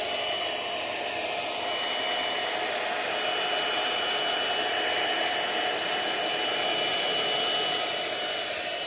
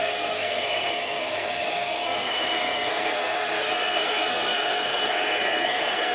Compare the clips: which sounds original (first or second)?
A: first